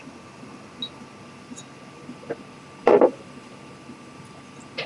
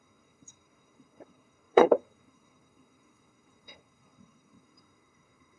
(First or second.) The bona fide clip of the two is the first